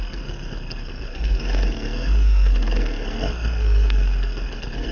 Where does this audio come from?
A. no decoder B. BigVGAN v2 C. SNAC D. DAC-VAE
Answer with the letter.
C